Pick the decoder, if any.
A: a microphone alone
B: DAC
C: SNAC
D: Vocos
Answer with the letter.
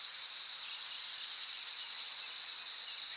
A